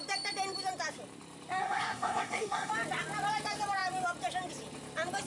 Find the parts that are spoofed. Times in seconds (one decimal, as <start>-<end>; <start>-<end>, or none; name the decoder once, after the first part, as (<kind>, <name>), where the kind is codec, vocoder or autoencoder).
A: 1.6-2.7 (codec, SNAC)